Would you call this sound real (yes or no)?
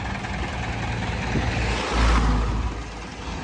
yes